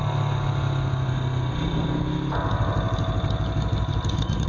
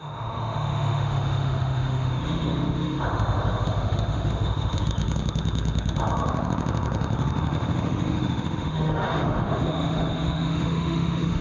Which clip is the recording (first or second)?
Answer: first